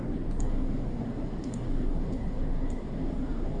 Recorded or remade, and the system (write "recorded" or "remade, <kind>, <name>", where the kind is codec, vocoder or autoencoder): remade, codec, SNAC